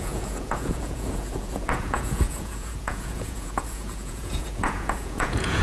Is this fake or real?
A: fake